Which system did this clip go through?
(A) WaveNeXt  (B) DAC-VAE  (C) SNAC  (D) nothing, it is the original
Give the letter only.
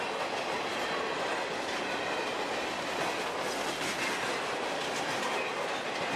D